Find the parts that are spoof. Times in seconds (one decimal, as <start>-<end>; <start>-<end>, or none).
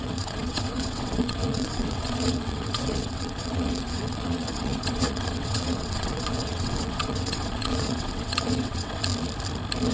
0.0-9.0